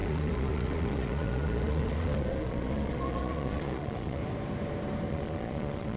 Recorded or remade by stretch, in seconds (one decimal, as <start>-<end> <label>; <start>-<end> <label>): 0.0-4.2 remade; 4.2-5.1 recorded; 5.1-6.0 remade